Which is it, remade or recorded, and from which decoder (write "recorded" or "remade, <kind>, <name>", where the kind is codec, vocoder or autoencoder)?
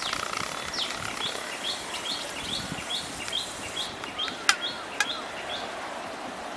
recorded